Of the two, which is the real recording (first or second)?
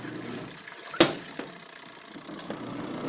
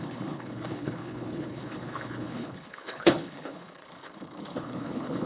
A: first